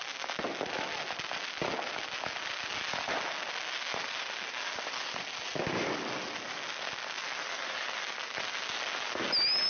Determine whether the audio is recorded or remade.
recorded